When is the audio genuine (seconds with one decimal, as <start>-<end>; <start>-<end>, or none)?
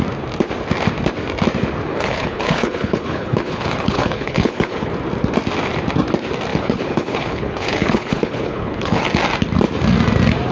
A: 0.0-1.9; 4.9-6.5; 9.1-10.5